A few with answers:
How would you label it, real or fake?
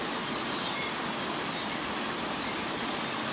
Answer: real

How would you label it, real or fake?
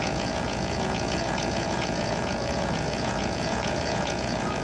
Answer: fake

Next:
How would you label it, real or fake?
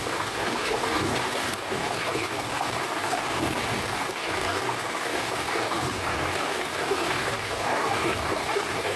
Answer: fake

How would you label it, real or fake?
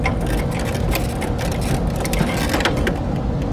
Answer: real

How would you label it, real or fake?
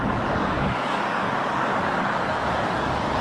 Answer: fake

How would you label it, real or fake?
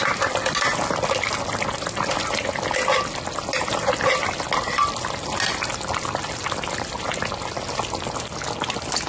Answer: real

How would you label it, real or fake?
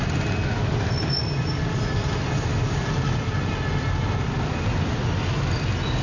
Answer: real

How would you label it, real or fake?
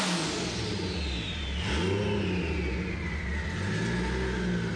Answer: real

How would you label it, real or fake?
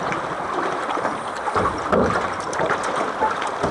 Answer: real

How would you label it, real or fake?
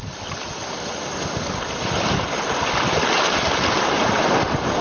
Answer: real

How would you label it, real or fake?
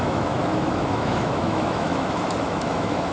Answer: fake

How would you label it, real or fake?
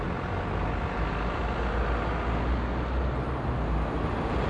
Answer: real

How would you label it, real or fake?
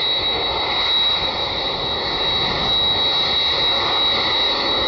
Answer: real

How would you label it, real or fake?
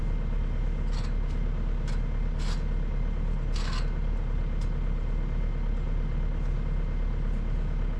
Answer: real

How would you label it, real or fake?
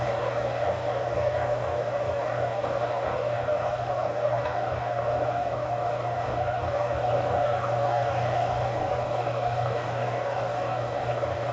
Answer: fake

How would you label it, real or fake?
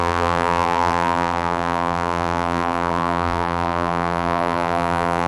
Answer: fake